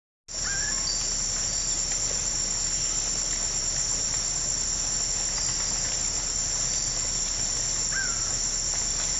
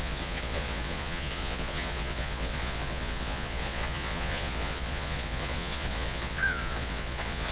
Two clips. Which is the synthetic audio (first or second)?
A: second